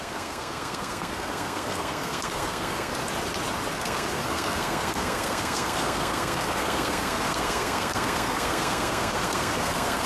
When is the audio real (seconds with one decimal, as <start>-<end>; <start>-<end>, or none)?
2.9-3.7